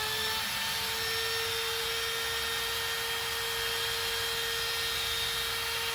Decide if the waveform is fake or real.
real